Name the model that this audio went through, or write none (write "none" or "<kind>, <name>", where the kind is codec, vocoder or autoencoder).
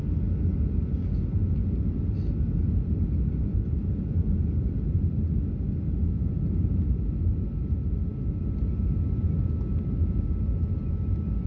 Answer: none